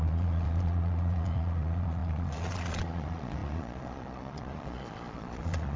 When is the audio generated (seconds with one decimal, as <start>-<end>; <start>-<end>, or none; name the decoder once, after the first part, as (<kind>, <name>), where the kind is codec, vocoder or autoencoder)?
0.0-5.8 (vocoder, Vocos)